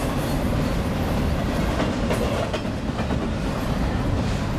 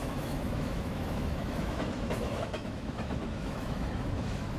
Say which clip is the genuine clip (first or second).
first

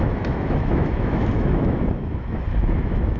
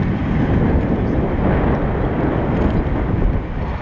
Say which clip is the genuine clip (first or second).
second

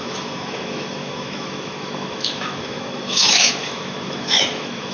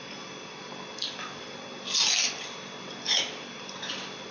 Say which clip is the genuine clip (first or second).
second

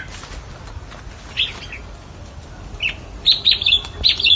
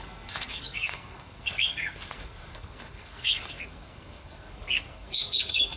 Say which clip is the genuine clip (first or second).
first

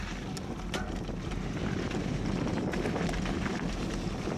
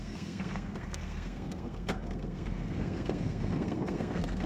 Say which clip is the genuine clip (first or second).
first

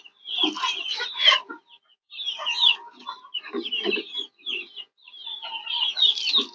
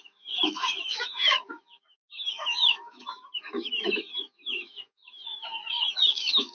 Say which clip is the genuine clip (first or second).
first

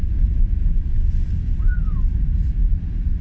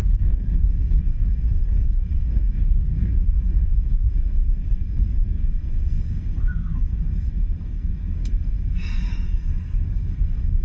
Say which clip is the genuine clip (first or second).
first